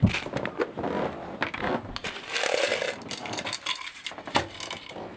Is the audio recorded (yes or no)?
yes